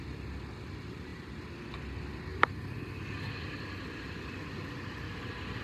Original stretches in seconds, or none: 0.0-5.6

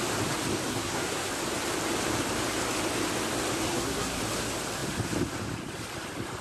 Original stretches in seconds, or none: 0.0-0.7; 1.3-3.7; 4.2-6.4

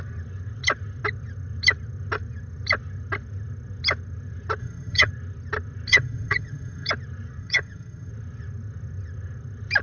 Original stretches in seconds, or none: 0.0-4.6; 5.1-5.9; 6.9-7.4; 8.1-9.8

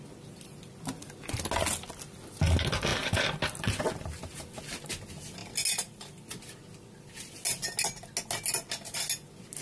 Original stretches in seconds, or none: 0.0-9.6

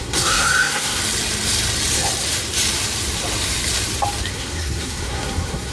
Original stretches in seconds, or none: 1.0-4.3

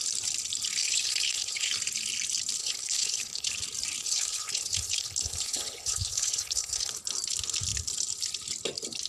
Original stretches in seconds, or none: 0.0-0.8; 1.7-2.6; 3.5-4.0; 6.9-9.1